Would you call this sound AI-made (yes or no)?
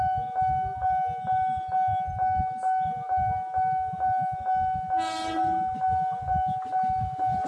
no